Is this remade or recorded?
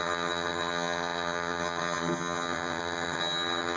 remade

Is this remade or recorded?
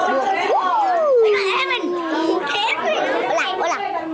recorded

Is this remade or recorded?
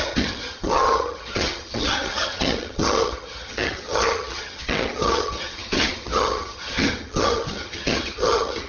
remade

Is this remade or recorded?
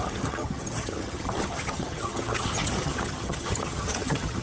remade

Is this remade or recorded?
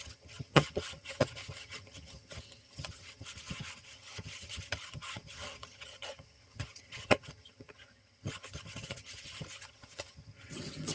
remade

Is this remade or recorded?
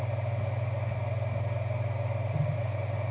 recorded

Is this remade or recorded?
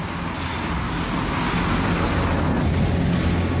recorded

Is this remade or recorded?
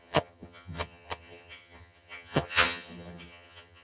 remade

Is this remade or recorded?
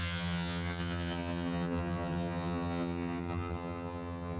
remade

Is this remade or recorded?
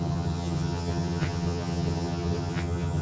remade